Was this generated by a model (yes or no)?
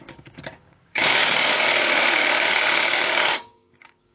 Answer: yes